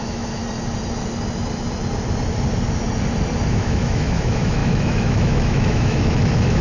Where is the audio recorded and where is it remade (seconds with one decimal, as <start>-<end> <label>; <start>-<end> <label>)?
0.0-0.4 remade; 0.4-3.5 recorded; 3.5-6.6 remade